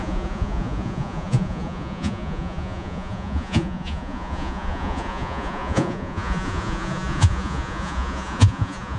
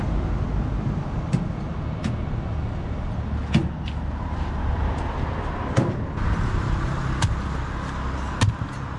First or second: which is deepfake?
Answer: first